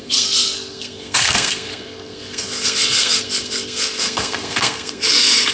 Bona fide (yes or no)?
no